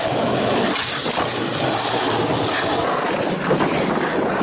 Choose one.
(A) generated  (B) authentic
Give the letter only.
B